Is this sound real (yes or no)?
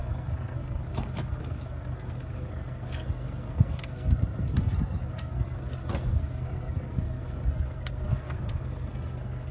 no